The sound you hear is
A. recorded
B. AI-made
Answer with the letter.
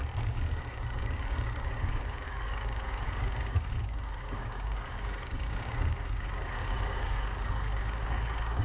B